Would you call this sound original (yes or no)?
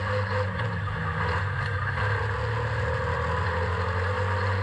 yes